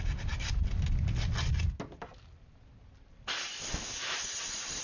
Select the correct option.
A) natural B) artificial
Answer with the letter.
A